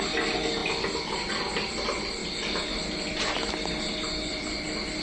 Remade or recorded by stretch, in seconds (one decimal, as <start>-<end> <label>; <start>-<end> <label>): 0.0-5.0 recorded